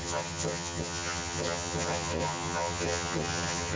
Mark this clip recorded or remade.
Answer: remade